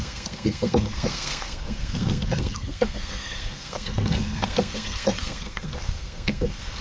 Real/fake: fake